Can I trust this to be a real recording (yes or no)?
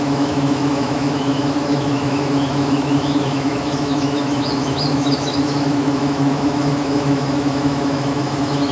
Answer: no